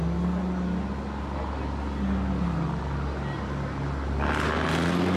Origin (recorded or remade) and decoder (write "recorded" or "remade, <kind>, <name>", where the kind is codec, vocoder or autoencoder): recorded